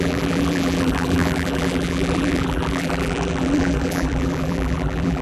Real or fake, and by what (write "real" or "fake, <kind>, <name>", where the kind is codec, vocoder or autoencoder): fake, vocoder, BigVGAN v2